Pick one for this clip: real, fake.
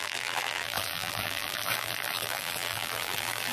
fake